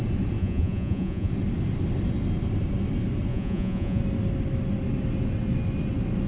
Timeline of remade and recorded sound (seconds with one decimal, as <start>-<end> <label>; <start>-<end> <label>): 0.0-0.4 recorded; 0.4-1.3 remade; 1.3-3.3 recorded; 3.3-4.0 remade; 4.0-6.3 recorded